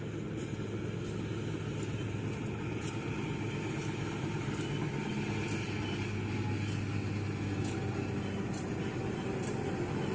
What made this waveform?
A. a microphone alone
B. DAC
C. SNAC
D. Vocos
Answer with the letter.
A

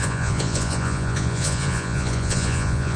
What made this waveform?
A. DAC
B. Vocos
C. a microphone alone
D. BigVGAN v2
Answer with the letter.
B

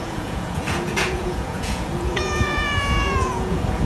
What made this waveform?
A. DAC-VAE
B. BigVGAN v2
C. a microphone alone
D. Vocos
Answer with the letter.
D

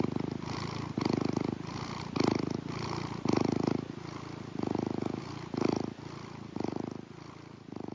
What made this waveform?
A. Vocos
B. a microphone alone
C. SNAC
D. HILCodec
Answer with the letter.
B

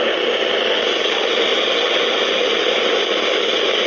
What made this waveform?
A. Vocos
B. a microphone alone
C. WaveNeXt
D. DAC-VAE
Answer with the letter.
B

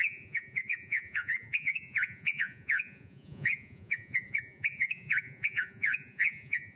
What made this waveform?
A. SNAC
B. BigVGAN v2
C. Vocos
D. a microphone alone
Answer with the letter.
C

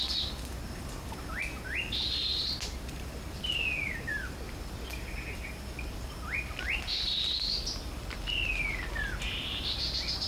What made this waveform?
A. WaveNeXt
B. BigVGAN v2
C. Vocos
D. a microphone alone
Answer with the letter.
D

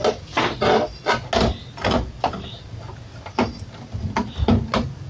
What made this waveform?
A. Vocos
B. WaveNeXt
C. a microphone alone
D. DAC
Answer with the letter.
C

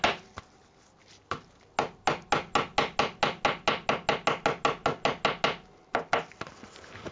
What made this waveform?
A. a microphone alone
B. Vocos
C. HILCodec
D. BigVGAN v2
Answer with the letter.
A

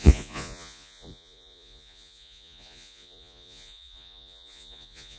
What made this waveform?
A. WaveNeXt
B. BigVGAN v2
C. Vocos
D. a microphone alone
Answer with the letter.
C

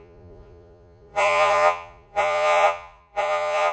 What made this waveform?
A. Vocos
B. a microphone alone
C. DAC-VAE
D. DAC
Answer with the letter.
A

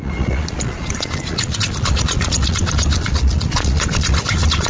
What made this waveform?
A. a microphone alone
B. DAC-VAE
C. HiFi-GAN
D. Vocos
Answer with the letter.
D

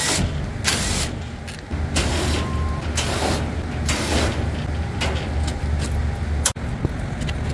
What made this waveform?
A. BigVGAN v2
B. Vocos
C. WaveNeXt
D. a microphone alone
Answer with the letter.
D